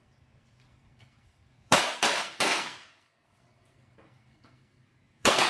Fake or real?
fake